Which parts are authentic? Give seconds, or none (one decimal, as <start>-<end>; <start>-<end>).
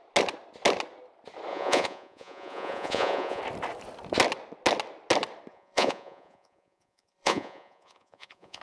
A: 0.0-1.5; 3.4-5.5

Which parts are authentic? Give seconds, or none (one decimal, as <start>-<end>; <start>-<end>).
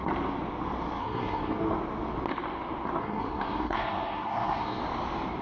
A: 0.0-1.0; 1.6-3.0; 4.8-5.4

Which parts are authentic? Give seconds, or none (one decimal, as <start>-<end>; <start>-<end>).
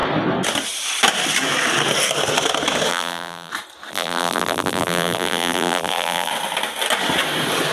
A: 0.0-2.9; 3.5-3.9; 6.3-7.7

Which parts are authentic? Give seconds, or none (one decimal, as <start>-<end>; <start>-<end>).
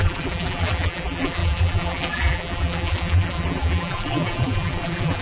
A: none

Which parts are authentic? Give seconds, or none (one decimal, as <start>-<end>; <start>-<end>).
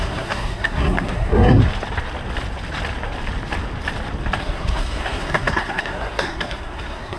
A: 1.6-4.4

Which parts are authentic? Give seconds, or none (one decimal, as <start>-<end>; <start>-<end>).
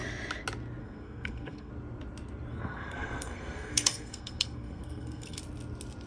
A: 0.0-0.8; 1.7-2.5; 5.4-6.1